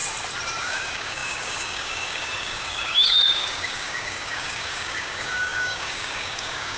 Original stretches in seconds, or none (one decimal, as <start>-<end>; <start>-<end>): 0.0-0.6